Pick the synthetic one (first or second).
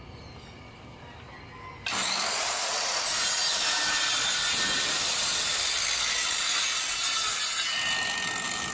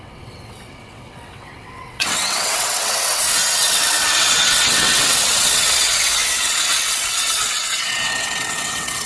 second